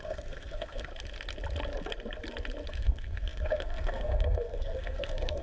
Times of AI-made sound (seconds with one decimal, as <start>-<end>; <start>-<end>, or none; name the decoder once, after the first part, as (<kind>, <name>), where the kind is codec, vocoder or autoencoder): 0.0-0.9 (codec, SNAC); 2.7-5.4

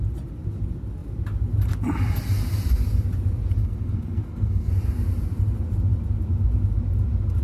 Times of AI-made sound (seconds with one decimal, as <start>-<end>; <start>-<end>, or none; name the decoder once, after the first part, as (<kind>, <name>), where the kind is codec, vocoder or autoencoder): 3.6-4.7 (codec, SNAC)

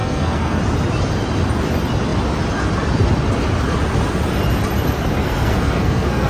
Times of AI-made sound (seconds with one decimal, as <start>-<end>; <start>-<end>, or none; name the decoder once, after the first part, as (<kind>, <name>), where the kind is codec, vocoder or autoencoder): 0.0-0.6 (codec, SNAC); 5.2-6.3